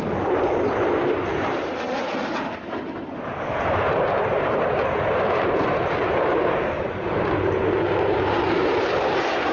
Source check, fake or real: fake